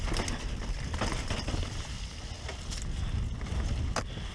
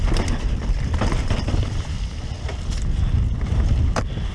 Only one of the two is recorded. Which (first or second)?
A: first